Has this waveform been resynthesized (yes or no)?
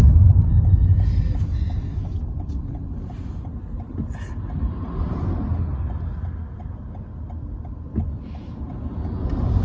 no